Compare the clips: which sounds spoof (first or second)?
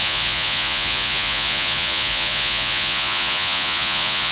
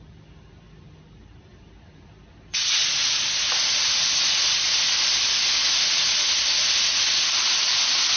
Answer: first